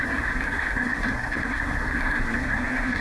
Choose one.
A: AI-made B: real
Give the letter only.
A